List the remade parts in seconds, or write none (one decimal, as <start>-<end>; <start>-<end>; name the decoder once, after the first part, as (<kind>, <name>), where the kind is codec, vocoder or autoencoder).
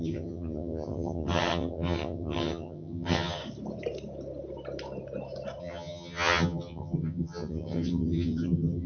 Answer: 0.0-3.4 (vocoder, HiFi-GAN); 5.6-8.9